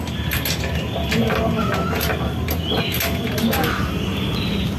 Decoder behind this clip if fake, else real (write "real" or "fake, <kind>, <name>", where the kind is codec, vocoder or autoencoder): real